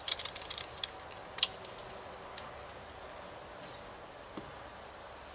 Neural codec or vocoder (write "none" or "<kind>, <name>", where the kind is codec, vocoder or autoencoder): none